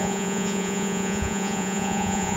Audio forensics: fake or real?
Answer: fake